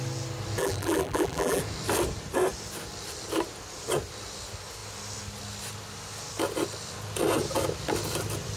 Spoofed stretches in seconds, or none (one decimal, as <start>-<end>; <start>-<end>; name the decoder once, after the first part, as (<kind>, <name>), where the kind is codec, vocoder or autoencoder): 0.6-1.6 (vocoder, BigVGAN v2)

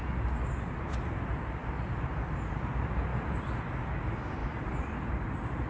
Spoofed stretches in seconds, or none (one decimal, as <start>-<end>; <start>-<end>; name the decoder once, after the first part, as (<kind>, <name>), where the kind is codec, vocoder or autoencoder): 1.6-2.5 (vocoder, BigVGAN v2); 3.1-3.6; 4.4-5.1

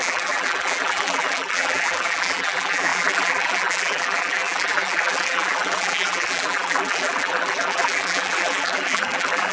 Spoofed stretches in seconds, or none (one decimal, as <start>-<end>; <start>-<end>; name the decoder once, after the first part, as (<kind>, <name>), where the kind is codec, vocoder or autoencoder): 0.0-9.5 (vocoder, BigVGAN v2)

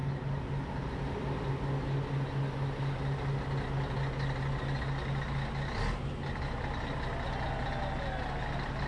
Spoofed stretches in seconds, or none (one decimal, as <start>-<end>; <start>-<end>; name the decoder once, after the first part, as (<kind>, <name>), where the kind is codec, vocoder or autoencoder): none